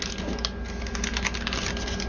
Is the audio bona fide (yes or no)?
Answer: yes